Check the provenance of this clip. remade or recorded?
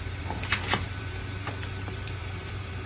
remade